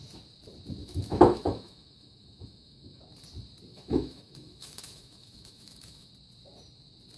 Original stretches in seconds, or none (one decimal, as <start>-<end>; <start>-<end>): 0.0-0.8; 3.0-3.7; 6.1-7.2